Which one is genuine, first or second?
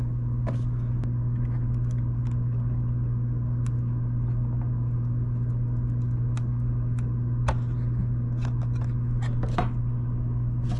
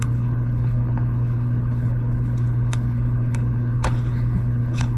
first